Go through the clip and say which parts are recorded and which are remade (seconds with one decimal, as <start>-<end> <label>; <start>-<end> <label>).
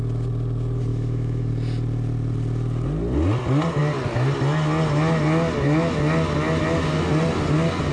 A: 0.0-0.9 recorded; 0.9-1.5 remade; 1.5-7.9 recorded